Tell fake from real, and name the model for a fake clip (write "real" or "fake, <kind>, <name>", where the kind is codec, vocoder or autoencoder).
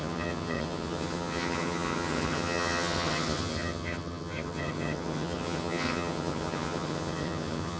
fake, vocoder, HiFi-GAN